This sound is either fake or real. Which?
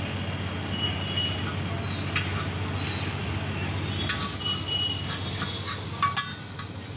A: real